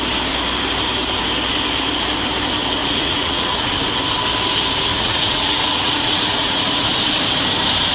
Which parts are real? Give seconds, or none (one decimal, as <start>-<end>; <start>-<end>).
0.0-2.8; 3.7-4.9; 6.9-7.9